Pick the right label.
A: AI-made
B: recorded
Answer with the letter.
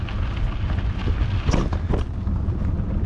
B